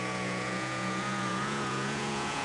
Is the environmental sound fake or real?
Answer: fake